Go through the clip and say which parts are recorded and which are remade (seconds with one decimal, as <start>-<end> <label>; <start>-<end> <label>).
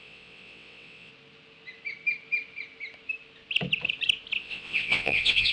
0.0-1.1 remade; 1.1-4.4 recorded; 4.4-5.5 remade